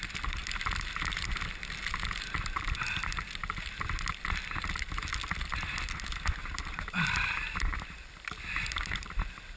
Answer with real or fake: real